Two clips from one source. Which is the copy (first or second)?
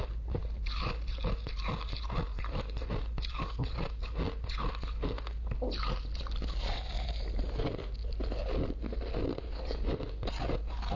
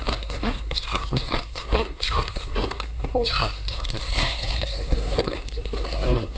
second